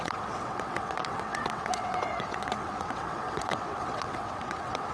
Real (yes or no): no